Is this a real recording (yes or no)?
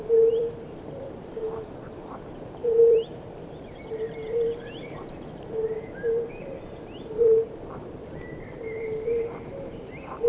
no